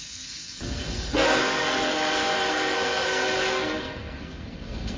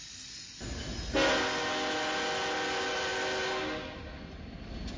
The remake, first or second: first